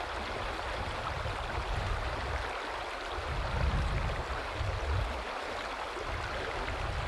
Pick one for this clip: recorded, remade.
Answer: recorded